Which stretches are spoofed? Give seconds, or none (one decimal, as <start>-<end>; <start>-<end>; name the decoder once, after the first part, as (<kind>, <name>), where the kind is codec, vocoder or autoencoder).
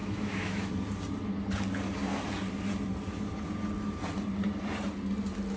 0.0-0.7 (autoencoder, DAC-VAE)